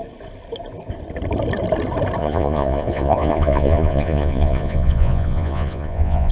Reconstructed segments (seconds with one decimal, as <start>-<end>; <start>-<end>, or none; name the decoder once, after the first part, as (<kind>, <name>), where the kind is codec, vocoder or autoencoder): 2.2-6.3 (vocoder, Vocos)